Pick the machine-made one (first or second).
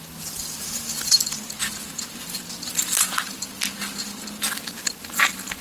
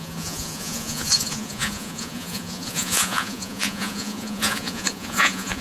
second